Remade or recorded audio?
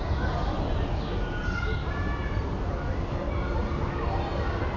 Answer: recorded